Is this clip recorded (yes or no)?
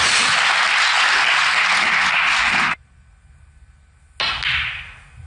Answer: yes